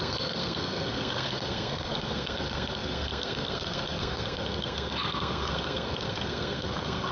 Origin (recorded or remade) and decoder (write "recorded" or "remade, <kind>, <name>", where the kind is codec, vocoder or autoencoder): remade, codec, SNAC